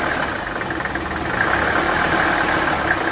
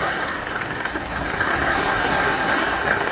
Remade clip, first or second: second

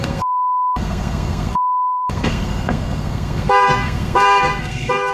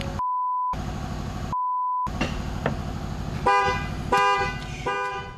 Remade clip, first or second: first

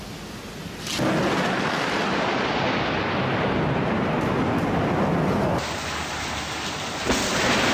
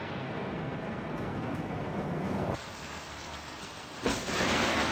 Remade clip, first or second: second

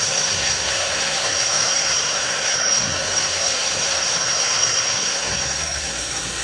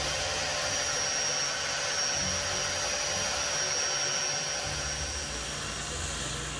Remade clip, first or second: first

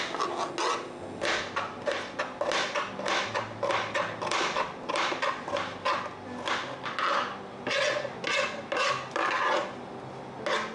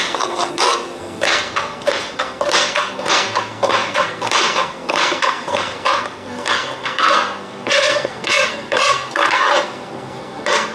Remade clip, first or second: second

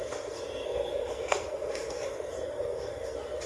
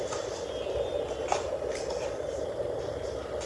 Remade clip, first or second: first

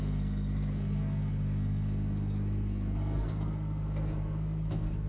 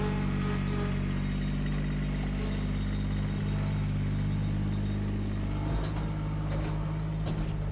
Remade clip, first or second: first